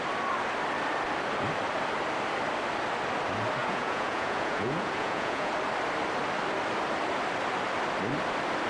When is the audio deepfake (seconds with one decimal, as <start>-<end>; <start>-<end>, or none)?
3.6-5.5